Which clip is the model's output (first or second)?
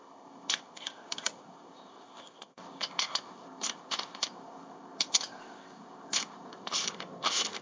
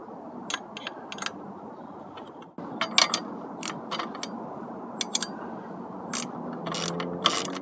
first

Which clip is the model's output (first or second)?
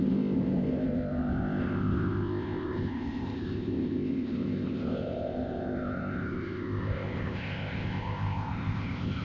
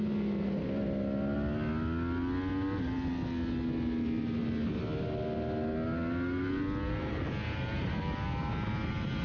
first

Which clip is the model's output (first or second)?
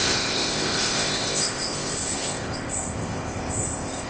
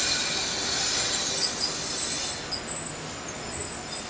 first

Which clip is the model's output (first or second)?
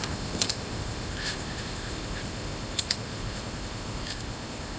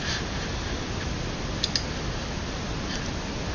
first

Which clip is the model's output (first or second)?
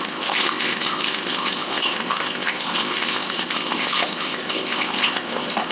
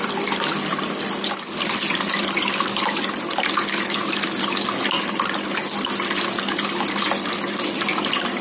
first